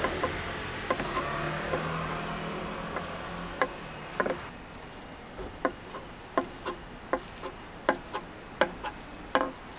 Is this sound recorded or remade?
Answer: recorded